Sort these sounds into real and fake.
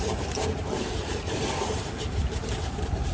fake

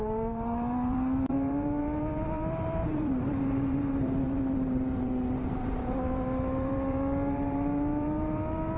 fake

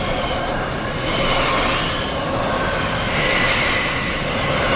real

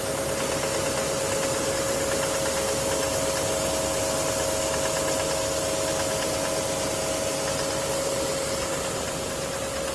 real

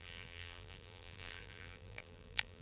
fake